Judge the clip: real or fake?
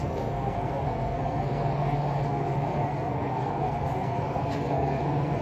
fake